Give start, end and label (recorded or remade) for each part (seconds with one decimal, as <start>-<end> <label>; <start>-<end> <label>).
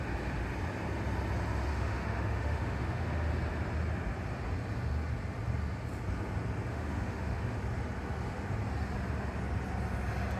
0.0-1.7 recorded; 1.7-3.3 remade; 3.3-6.7 recorded; 6.7-7.6 remade; 7.6-10.4 recorded